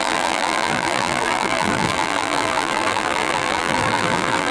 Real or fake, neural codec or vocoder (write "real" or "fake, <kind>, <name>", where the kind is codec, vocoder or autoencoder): fake, vocoder, BigVGAN v2